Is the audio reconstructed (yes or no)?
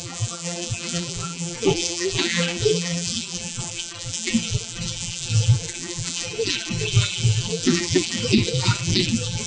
yes